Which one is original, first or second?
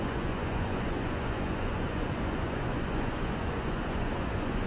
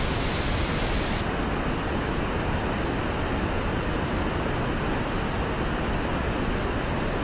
second